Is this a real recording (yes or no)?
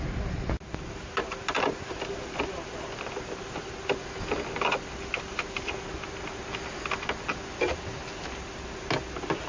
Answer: yes